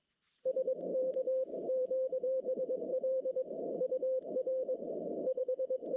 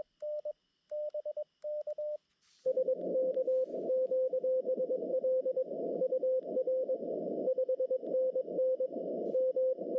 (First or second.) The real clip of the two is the second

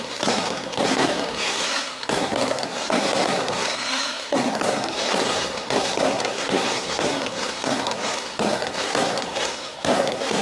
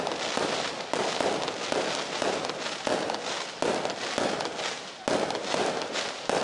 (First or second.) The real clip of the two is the second